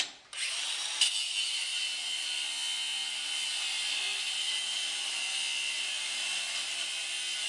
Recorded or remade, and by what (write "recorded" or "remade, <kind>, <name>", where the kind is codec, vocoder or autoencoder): remade, vocoder, BigVGAN v2